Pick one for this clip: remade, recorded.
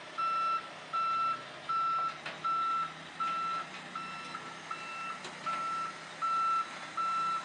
recorded